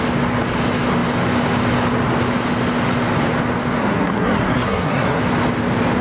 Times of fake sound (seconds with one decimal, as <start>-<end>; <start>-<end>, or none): 3.8-5.2